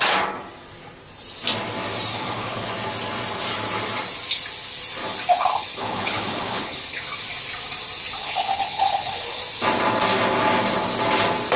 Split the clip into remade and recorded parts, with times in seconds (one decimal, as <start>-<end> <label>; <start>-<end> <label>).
0.0-2.1 recorded; 2.1-2.7 remade; 2.7-5.3 recorded; 5.3-7.0 remade; 7.0-8.2 recorded; 8.2-9.4 remade; 9.4-11.6 recorded